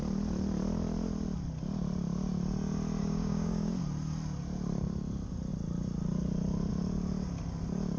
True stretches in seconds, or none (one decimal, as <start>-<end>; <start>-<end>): 0.0-3.0; 3.8-8.0